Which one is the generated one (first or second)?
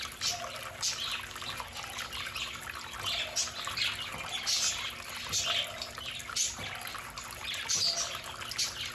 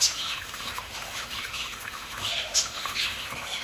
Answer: second